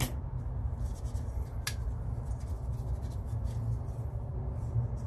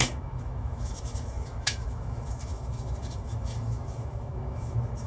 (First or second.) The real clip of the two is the first